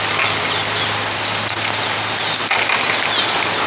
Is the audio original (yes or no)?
yes